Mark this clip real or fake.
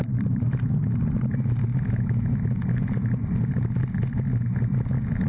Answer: real